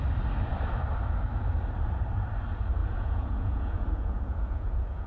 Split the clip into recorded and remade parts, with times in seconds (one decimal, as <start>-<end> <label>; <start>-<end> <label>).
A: 0.0-2.8 recorded; 2.8-5.1 remade